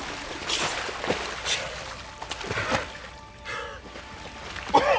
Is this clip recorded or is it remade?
recorded